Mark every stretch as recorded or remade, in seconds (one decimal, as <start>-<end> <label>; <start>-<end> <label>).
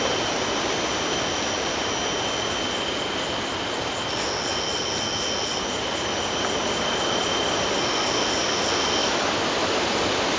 0.0-10.4 recorded